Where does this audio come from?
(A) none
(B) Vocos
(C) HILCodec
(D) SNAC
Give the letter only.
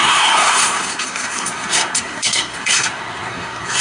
D